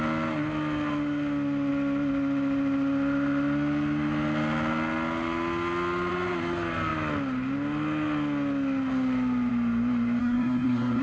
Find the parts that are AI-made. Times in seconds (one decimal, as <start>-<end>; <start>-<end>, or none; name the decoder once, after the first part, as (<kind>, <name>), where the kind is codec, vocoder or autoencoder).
10.2-11.0 (codec, SNAC)